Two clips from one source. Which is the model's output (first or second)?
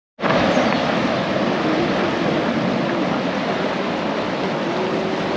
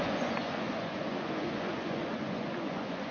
second